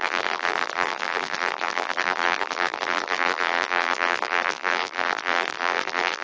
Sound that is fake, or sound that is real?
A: fake